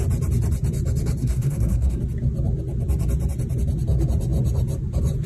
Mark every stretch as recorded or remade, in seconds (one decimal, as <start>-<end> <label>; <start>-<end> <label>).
0.0-1.2 recorded; 1.2-2.0 remade; 2.0-5.3 recorded